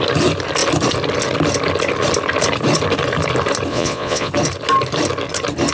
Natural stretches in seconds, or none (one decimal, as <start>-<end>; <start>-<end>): 0.0-3.7; 4.3-5.7